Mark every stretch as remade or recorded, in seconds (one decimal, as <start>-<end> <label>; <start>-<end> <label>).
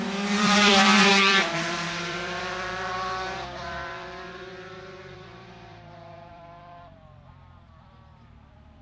0.0-8.8 remade